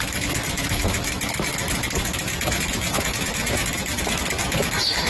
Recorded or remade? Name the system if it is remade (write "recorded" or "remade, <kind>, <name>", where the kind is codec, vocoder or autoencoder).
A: remade, autoencoder, DAC-VAE